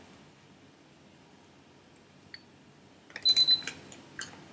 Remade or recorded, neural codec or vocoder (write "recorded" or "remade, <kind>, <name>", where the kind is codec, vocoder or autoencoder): recorded